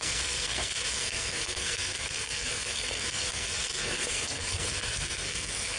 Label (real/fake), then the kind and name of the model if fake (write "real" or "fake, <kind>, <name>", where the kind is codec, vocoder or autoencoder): fake, codec, SNAC